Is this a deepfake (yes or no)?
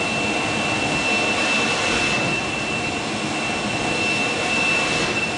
no